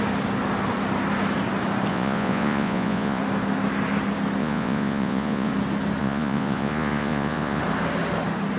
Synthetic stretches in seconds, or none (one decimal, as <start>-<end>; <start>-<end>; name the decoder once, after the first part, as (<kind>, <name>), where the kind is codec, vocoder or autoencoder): 1.9-3.2 (vocoder, Vocos); 4.4-5.5; 6.0-7.6